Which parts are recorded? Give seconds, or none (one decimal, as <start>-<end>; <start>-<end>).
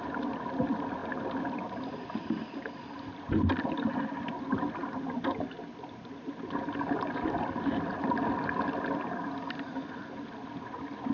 0.0-11.1